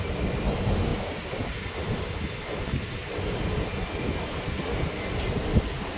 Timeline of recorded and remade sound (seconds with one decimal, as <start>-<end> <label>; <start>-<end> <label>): 0.0-6.0 recorded